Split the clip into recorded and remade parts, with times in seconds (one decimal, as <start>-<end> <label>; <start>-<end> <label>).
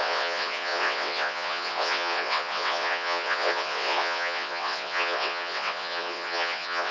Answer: 0.0-6.9 remade